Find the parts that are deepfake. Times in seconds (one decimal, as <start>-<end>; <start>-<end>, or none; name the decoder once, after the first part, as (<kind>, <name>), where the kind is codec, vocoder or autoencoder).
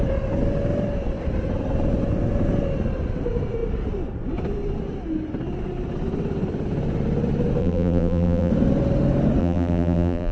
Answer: 7.6-8.5 (vocoder, BigVGAN v2); 9.4-10.3